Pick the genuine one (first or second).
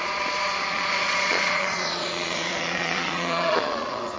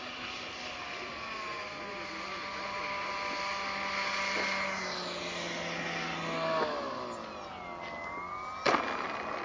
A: second